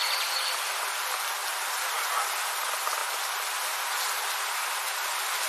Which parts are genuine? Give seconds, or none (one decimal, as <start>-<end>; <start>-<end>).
0.0-5.5